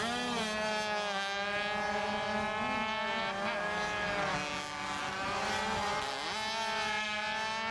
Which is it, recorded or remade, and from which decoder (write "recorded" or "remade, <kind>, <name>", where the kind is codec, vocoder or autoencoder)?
recorded